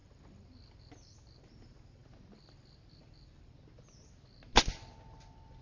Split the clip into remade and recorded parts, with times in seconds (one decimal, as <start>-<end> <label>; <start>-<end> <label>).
0.0-5.6 recorded